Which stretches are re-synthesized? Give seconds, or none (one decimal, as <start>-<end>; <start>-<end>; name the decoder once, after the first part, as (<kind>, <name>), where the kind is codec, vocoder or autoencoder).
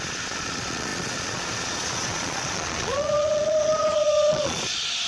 0.0-5.1 (vocoder, Vocos)